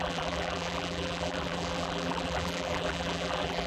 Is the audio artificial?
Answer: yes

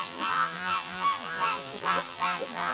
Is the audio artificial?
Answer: yes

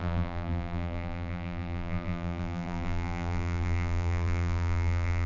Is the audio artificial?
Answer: yes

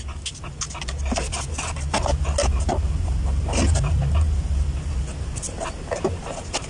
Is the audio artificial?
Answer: no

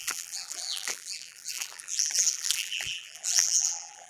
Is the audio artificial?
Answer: yes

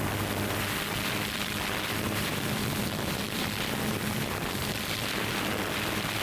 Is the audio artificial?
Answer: yes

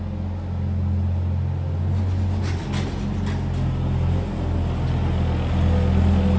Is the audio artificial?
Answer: no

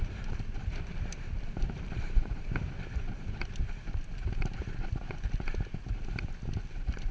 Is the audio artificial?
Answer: yes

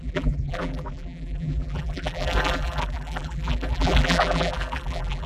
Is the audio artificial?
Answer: yes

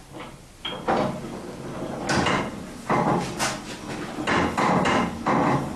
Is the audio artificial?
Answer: no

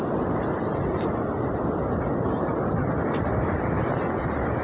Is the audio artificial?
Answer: yes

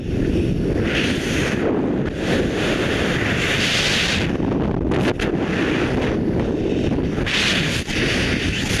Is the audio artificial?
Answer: no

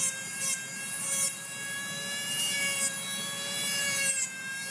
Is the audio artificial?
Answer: yes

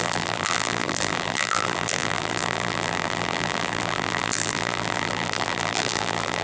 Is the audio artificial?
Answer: yes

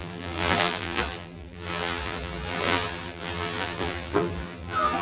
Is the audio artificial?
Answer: yes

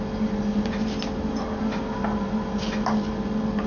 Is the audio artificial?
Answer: no